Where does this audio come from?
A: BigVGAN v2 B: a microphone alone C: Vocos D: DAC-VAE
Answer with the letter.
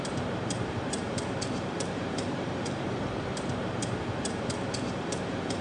A